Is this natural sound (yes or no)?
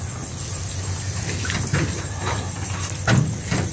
yes